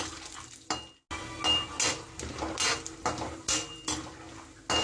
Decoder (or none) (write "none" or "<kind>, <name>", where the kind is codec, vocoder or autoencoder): none